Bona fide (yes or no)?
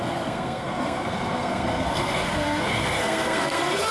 no